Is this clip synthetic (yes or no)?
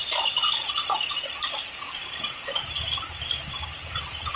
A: no